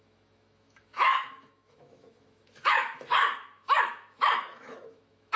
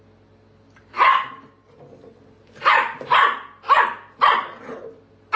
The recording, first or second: second